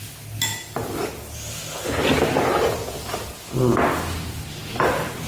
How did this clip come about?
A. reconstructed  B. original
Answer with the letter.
B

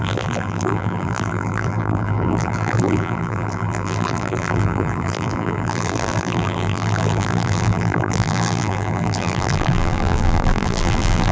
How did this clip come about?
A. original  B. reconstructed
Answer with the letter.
B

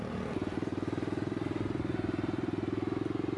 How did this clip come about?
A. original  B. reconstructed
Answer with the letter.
A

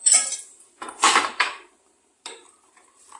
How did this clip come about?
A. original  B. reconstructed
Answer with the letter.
B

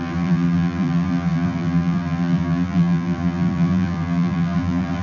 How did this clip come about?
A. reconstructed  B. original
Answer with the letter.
A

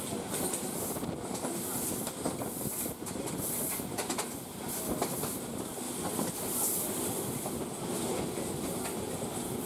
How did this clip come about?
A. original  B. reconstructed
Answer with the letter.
A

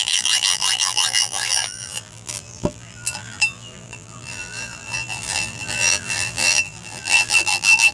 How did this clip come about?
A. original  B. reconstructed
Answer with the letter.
B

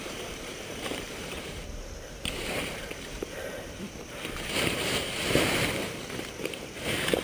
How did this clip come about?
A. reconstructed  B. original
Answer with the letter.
A